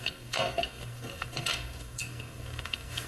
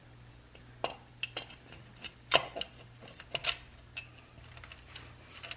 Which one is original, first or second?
second